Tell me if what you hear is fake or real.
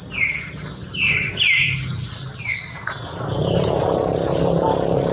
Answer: real